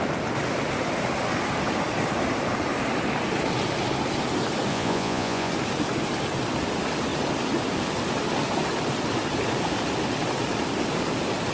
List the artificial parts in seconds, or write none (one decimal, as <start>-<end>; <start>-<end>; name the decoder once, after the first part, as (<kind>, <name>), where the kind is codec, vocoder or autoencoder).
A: 4.7-5.5 (vocoder, Vocos)